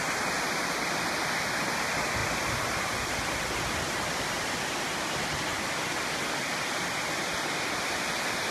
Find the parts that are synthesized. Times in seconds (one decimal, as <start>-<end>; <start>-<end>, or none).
none